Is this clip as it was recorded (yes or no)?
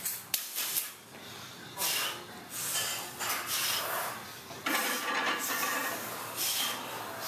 yes